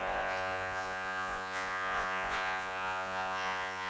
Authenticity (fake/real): fake